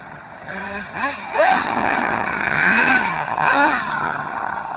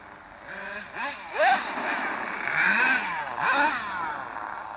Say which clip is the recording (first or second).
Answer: second